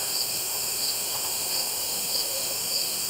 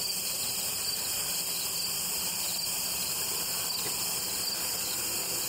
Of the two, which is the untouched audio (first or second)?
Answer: second